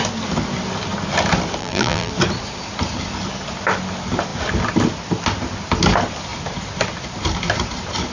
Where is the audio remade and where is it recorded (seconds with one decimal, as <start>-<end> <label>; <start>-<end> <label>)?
0.0-1.6 recorded; 1.6-2.1 remade; 2.1-8.1 recorded